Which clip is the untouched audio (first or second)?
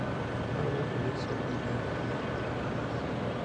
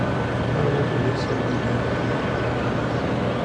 second